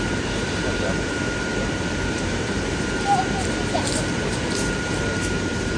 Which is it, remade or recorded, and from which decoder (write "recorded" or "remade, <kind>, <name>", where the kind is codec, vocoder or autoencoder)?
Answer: remade, vocoder, BigVGAN v2